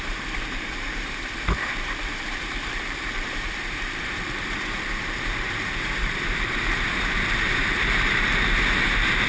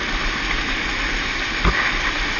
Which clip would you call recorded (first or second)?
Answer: second